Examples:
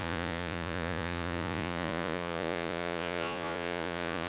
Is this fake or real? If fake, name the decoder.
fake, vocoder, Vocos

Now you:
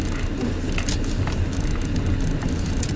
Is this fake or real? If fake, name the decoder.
real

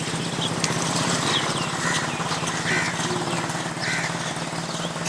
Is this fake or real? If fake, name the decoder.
real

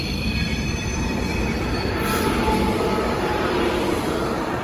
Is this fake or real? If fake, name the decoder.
fake, vocoder, BigVGAN v2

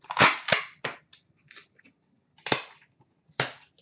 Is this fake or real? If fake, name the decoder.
real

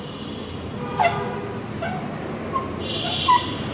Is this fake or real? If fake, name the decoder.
real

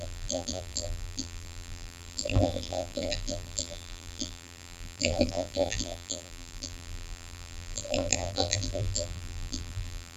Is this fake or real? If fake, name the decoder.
fake, vocoder, BigVGAN v2